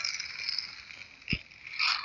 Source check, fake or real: real